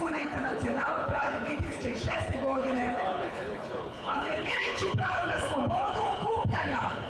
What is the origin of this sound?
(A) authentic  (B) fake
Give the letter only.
B